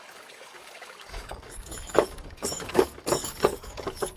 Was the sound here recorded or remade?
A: remade